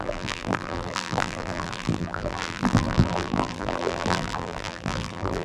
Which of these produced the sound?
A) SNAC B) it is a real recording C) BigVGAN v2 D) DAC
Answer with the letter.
C